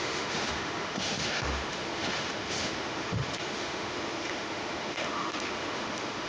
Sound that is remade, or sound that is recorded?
remade